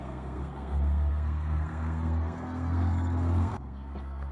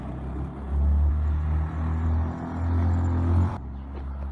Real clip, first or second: second